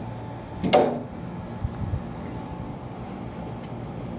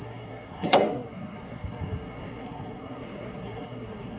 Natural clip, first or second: first